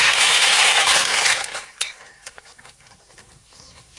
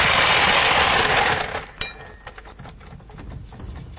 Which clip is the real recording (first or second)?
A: second